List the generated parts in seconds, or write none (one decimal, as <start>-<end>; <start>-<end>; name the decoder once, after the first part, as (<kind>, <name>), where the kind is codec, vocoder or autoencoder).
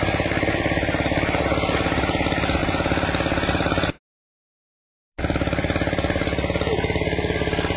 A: none